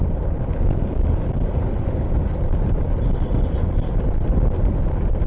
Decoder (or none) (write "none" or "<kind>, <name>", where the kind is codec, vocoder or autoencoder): none